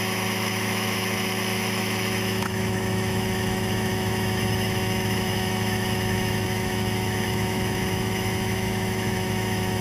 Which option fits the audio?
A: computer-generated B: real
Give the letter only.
A